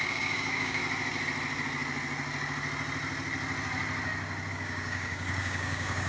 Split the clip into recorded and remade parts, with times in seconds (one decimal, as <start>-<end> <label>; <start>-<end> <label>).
0.0-0.8 remade; 0.8-4.5 recorded; 4.5-6.1 remade